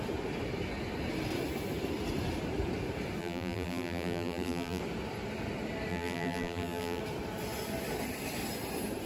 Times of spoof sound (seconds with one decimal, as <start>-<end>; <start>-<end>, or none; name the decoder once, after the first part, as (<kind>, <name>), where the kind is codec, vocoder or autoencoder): 3.2-4.8 (vocoder, BigVGAN v2); 5.9-7.0